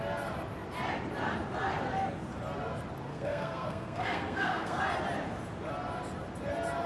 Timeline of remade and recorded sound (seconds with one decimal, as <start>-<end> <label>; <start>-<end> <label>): 0.0-3.1 recorded; 3.1-4.8 remade; 4.8-6.9 recorded